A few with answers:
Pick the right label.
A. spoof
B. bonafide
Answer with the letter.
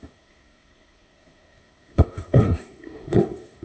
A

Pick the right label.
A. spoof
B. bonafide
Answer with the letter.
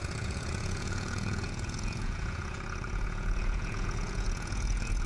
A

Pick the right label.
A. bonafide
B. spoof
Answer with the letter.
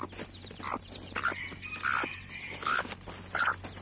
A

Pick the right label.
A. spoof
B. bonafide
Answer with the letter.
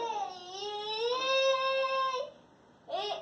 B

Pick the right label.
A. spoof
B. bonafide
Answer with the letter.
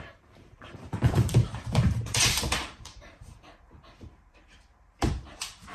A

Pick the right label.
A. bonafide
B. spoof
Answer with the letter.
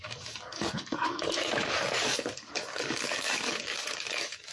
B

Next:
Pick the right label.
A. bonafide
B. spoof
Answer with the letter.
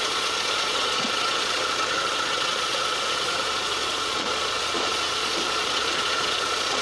B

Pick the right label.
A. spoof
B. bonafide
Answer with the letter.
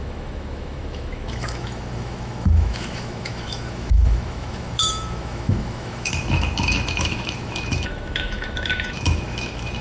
A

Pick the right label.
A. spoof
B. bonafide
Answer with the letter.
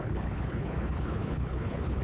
A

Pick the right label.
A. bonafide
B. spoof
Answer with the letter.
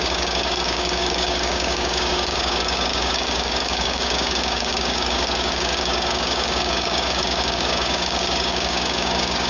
B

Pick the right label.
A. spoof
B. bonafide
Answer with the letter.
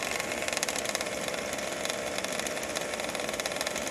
B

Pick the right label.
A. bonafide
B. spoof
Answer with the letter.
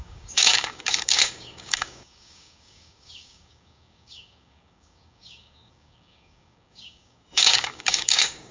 B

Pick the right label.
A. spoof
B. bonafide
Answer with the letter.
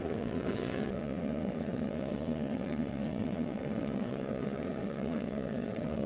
A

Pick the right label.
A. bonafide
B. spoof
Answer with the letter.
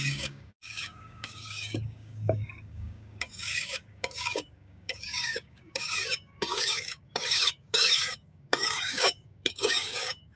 B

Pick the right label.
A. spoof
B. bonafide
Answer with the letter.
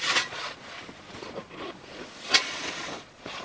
A